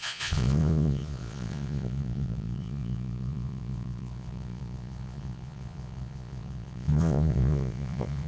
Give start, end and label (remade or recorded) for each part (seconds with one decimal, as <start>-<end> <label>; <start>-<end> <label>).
0.0-8.3 remade